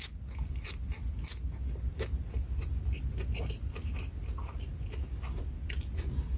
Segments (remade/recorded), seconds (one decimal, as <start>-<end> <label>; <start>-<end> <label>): 0.0-6.4 recorded